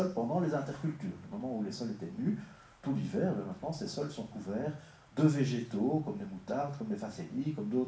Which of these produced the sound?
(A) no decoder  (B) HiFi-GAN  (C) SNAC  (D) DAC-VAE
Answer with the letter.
A